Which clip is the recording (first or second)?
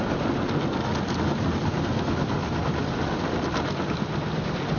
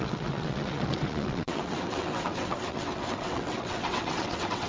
first